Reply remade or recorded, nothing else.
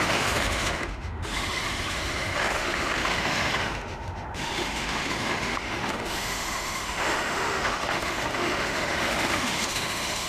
remade